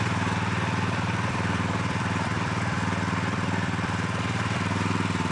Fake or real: fake